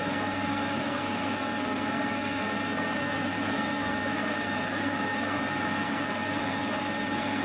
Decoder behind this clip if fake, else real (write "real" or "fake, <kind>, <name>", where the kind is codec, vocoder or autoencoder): fake, codec, SNAC